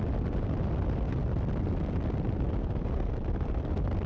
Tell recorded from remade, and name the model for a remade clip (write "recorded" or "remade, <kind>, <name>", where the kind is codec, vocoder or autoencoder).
recorded